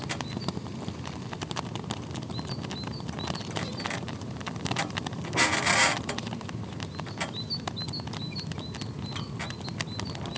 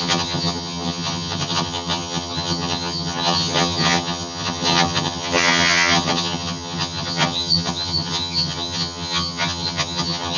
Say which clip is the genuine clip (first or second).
first